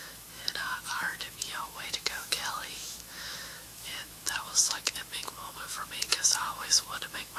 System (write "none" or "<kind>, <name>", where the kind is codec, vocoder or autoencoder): autoencoder, DAC-VAE